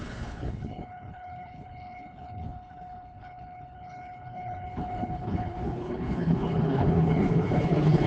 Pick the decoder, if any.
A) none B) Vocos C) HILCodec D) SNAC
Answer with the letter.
C